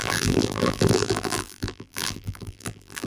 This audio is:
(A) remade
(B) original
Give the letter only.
A